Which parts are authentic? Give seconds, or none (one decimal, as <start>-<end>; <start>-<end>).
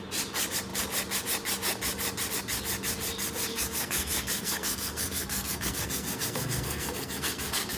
0.0-3.5